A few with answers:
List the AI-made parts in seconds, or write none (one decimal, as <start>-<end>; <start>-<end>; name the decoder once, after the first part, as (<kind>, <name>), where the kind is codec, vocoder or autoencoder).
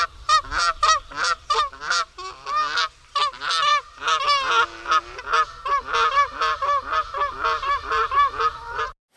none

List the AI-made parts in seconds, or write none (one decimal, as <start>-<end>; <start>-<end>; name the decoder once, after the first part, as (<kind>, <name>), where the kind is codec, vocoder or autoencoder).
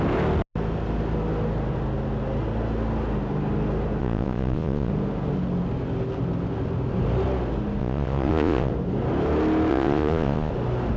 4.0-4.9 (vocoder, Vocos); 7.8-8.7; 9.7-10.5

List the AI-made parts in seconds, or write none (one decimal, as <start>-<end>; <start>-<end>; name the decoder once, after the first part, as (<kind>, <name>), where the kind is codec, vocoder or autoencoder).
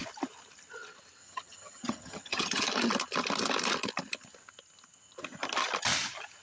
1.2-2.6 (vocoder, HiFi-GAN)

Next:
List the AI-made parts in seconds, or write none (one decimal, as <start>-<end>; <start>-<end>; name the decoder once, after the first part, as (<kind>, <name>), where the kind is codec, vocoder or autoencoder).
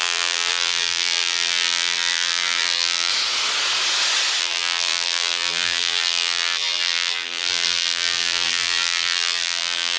0.0-3.1 (vocoder, BigVGAN v2); 4.4-10.0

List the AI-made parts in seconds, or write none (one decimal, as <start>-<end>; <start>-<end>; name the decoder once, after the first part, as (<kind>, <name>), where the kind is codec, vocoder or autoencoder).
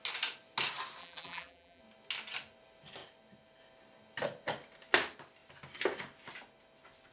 1.0-1.8 (vocoder, BigVGAN v2)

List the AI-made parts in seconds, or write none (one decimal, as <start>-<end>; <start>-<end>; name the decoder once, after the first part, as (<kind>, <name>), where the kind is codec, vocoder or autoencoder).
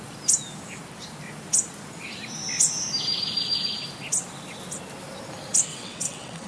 5.7-6.5 (vocoder, WaveNeXt)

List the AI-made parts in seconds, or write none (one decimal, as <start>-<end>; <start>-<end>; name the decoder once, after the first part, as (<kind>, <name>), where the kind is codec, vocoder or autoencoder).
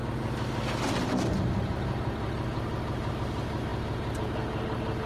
none